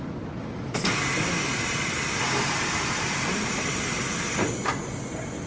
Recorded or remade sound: recorded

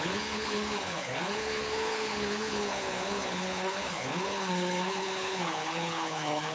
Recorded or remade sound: remade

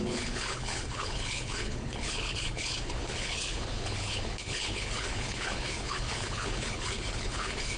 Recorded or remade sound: remade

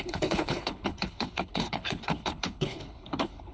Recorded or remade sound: remade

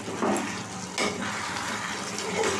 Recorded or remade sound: recorded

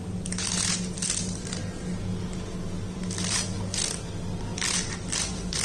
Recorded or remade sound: recorded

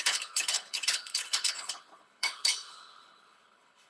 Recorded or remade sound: remade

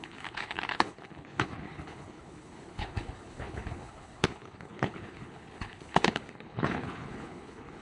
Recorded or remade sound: remade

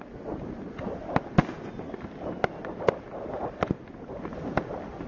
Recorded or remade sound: recorded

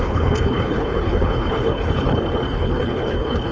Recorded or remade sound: remade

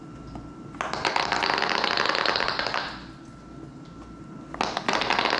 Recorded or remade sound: recorded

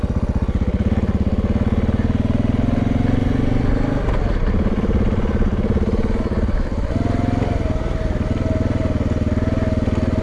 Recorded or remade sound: recorded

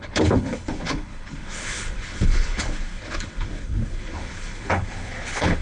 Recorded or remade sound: remade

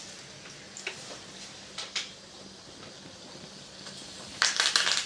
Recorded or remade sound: recorded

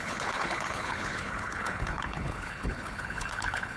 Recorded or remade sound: remade